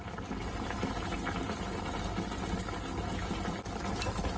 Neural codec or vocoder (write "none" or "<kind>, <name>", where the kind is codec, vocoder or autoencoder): none